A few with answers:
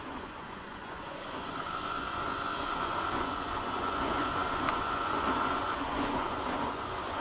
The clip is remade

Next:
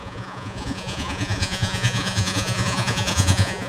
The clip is remade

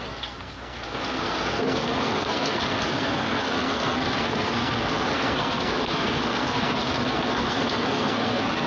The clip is remade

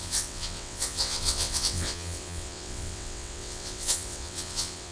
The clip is remade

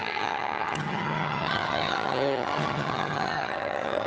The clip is remade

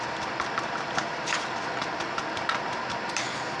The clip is recorded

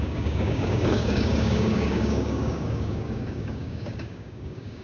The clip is remade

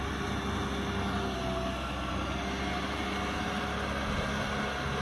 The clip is recorded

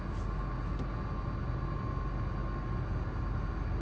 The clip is recorded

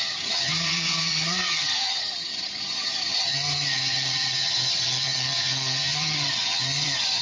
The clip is remade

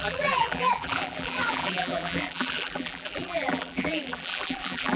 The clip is remade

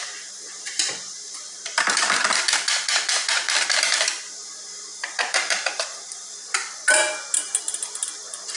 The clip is remade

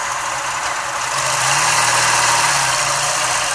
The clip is recorded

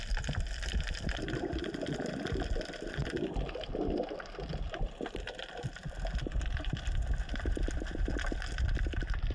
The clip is remade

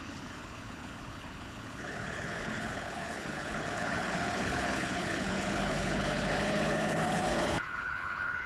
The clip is remade